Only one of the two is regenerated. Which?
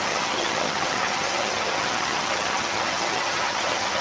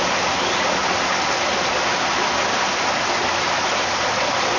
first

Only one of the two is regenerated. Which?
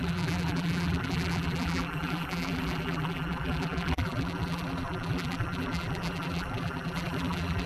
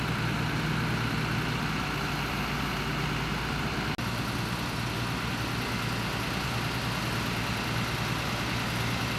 first